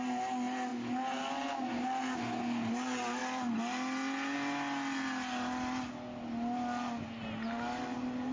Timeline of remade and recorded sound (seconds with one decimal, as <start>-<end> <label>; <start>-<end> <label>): 0.0-8.3 recorded